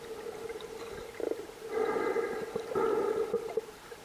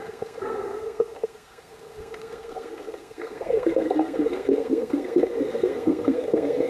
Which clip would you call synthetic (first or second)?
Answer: second